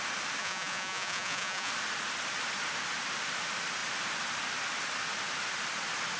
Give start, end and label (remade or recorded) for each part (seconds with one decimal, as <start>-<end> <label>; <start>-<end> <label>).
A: 0.0-0.4 recorded; 0.4-1.7 remade; 1.7-6.2 recorded